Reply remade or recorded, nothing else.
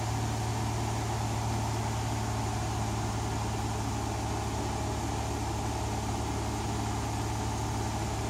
recorded